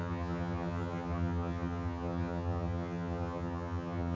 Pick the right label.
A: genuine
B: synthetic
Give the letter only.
B